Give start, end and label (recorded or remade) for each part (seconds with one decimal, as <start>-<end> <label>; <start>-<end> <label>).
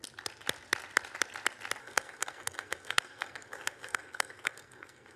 0.0-1.8 recorded; 1.8-5.2 remade